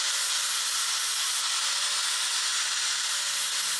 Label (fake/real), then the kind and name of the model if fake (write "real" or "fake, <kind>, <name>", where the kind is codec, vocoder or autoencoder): real